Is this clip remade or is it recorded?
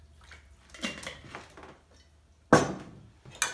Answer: recorded